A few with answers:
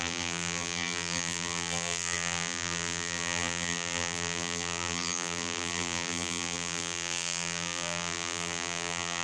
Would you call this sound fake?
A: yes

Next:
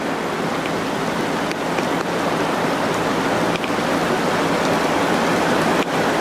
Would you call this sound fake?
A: no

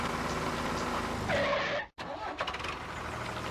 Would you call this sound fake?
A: no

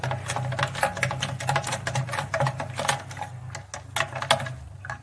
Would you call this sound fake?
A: no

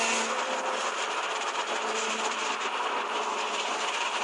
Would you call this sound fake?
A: yes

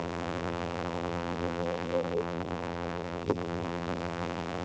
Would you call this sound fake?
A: yes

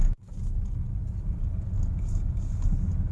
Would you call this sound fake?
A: no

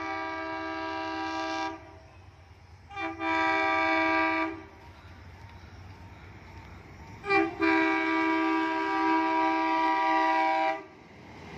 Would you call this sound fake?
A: no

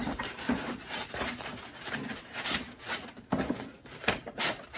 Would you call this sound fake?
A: yes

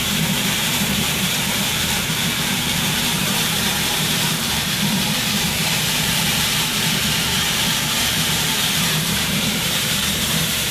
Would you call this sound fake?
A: yes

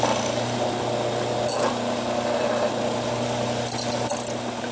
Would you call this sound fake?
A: no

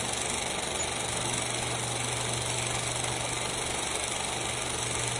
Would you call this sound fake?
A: no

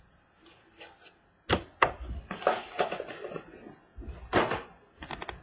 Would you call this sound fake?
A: no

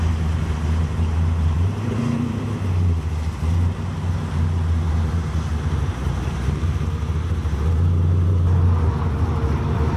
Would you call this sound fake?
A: yes